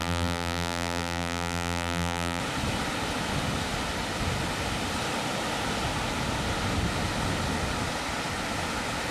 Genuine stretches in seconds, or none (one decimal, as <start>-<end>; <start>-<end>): 2.4-9.1